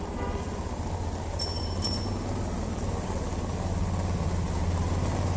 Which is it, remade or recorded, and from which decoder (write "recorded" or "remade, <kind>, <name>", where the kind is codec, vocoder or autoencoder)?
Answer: recorded